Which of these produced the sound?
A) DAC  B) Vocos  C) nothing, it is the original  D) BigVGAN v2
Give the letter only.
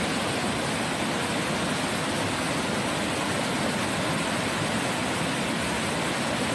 C